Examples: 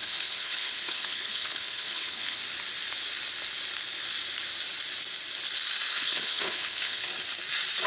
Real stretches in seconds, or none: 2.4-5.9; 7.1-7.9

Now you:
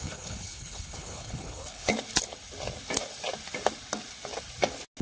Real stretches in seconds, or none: 1.9-5.0

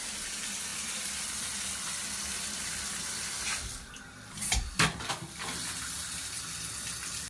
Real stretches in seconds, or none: 0.0-7.3

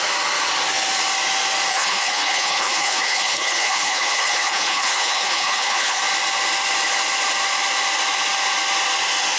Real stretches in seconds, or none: 0.0-1.7; 6.0-9.4

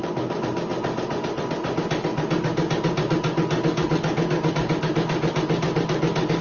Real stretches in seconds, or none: 0.0-6.4

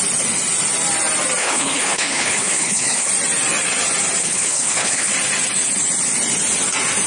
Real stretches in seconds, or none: 0.0-1.4; 3.1-4.2; 5.1-7.1

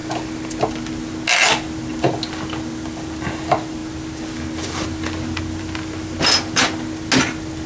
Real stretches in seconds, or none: 0.0-7.7